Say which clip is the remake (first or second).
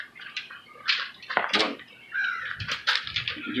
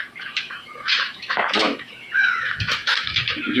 second